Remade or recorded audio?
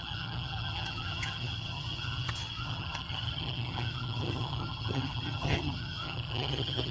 remade